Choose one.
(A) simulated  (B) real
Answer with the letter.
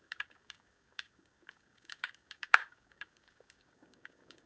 A